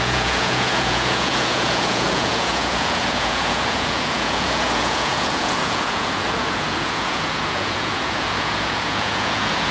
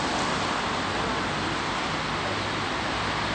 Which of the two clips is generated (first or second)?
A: first